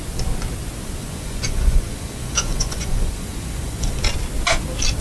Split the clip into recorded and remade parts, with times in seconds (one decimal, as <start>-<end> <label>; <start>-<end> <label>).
0.0-1.0 recorded; 1.0-4.0 remade; 4.0-5.0 recorded